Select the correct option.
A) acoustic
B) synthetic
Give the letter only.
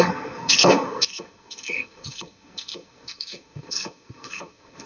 B